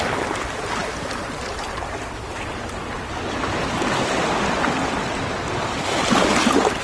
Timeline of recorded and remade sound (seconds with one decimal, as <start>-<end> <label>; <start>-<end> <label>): 0.0-6.8 recorded